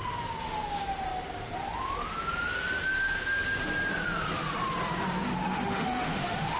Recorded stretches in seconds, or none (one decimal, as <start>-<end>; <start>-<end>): 0.0-5.2